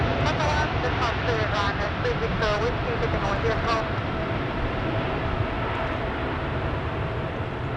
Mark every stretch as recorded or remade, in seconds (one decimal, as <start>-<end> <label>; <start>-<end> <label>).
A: 0.0-1.6 recorded; 1.6-2.6 remade; 2.6-3.2 recorded; 3.2-4.4 remade; 4.4-7.8 recorded